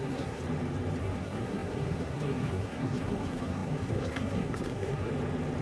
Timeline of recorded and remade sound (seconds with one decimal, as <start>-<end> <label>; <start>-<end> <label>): 0.0-0.4 remade; 0.4-1.0 recorded; 1.0-5.1 remade; 5.1-5.6 recorded